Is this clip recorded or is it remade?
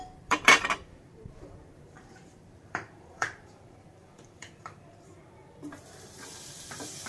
remade